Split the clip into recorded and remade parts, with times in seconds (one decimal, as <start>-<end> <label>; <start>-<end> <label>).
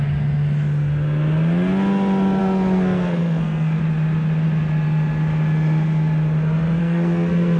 0.0-2.4 recorded; 2.4-3.8 remade; 3.8-6.8 recorded; 6.8-7.6 remade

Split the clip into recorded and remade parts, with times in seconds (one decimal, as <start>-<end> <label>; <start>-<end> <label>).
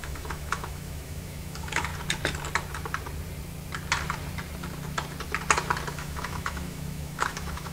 0.0-1.9 remade; 1.9-5.9 recorded; 5.9-7.7 remade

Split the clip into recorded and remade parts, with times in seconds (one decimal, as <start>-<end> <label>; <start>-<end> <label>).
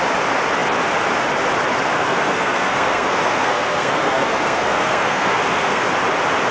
0.0-1.9 recorded; 1.9-5.8 remade; 5.8-6.5 recorded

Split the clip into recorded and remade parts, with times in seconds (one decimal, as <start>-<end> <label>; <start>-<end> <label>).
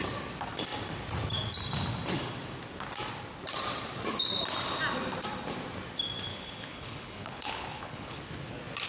0.0-6.3 recorded; 6.3-8.2 remade; 8.2-8.9 recorded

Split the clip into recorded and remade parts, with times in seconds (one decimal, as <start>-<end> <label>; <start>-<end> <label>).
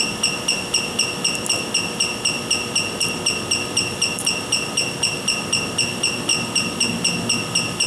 0.0-7.9 recorded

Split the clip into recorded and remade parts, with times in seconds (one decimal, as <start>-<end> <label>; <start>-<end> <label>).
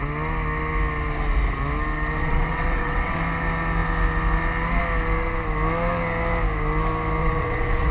0.0-2.2 recorded; 2.2-3.2 remade; 3.2-7.2 recorded; 7.2-7.9 remade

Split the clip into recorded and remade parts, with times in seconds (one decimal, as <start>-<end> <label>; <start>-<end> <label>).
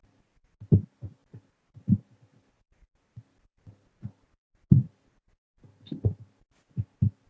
0.0-7.3 recorded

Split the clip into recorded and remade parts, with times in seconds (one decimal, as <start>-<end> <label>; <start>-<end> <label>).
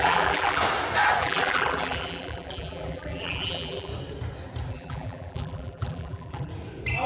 0.0-0.6 remade; 0.6-1.2 recorded; 1.2-3.9 remade; 3.9-4.7 recorded; 4.7-6.5 remade; 6.5-7.1 recorded